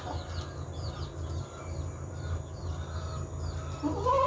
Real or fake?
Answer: real